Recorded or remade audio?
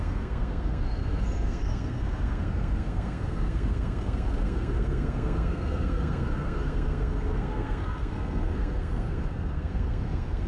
remade